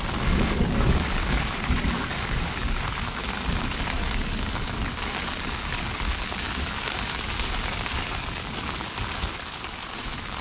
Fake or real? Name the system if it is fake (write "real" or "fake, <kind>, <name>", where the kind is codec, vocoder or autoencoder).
fake, codec, DAC